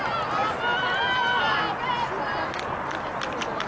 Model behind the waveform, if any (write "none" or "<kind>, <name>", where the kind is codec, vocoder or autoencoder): none